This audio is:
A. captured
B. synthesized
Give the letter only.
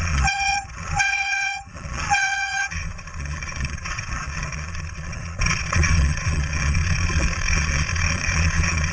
B